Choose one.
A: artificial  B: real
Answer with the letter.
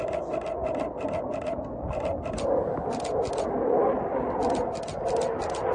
B